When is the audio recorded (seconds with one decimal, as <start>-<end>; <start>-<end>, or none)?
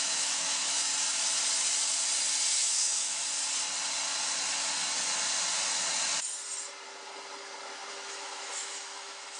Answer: 0.9-2.5; 3.2-7.9